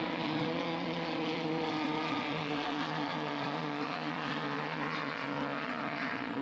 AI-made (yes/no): yes